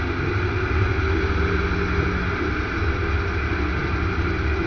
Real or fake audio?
real